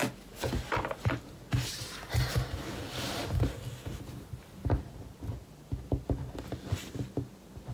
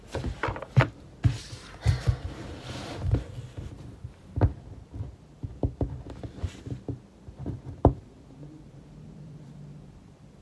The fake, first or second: second